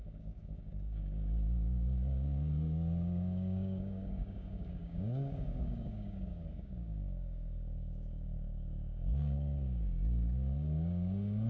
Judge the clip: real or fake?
fake